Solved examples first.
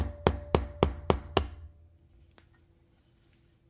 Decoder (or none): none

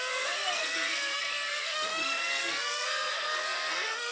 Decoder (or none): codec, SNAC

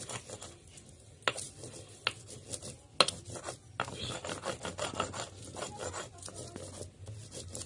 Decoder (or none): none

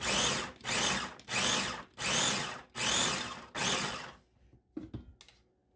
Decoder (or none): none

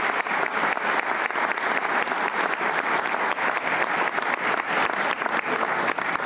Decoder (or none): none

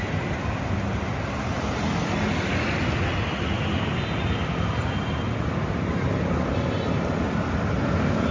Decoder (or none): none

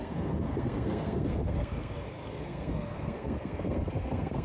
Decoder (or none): codec, SNAC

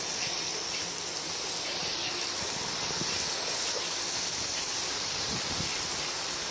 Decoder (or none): none